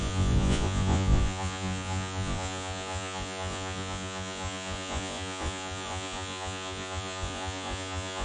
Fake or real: fake